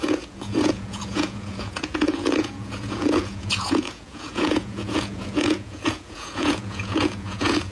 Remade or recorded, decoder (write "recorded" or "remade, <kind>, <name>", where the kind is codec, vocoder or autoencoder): remade, vocoder, Vocos